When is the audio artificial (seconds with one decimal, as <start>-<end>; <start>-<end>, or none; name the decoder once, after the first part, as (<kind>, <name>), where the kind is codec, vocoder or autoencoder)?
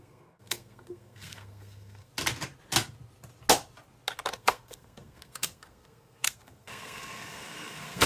0.0-2.1 (codec, SNAC); 4.3-8.1